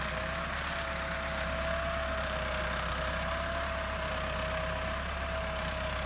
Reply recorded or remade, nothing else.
recorded